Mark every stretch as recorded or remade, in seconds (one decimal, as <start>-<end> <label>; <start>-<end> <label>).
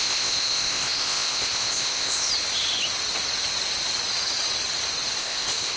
0.0-2.3 remade; 2.3-5.2 recorded; 5.2-5.8 remade